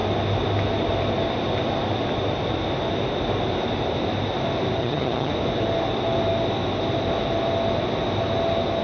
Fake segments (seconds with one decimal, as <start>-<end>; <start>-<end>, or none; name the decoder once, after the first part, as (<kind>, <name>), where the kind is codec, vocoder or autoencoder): 4.8-5.3 (vocoder, HiFi-GAN)